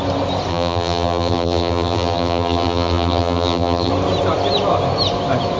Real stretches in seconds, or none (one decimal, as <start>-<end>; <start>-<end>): 0.0-0.5; 3.9-5.6